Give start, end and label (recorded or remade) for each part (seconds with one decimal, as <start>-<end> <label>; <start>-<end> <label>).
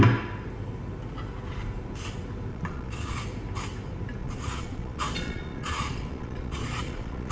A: 0.0-2.5 recorded; 2.5-3.2 remade; 3.2-4.2 recorded; 4.2-7.3 remade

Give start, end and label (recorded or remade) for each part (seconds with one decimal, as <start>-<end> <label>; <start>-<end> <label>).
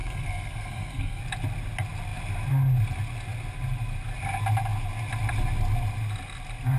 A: 0.0-1.2 remade; 1.2-6.8 recorded